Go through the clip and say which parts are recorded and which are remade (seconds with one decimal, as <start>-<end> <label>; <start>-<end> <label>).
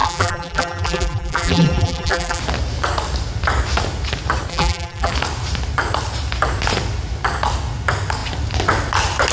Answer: 0.0-2.4 remade; 2.4-4.5 recorded; 4.5-5.1 remade; 5.1-9.3 recorded